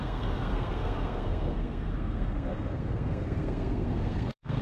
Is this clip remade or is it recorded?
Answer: remade